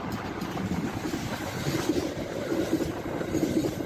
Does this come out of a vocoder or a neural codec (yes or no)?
yes